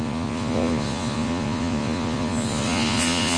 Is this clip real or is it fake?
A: fake